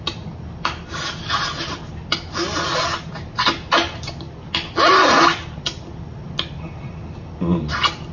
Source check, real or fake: real